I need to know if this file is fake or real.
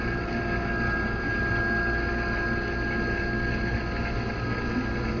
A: real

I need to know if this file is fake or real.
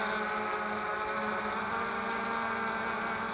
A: real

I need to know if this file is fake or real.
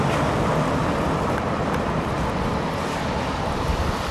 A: fake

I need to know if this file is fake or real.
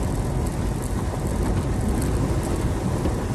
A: real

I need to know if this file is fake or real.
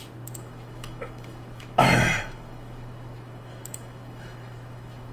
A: fake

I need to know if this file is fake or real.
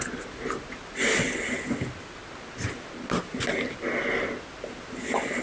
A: real